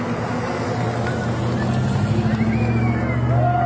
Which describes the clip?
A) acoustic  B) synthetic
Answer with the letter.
A